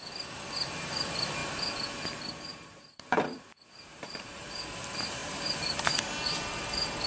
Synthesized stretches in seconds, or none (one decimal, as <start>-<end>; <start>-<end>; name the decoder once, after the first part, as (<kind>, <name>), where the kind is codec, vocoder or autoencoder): 0.0-1.4 (vocoder, BigVGAN v2); 2.1-7.1